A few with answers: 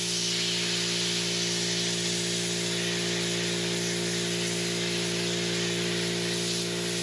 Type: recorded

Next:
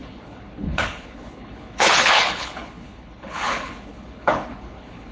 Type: remade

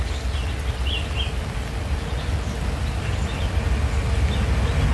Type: recorded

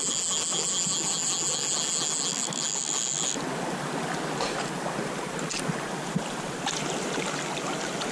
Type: recorded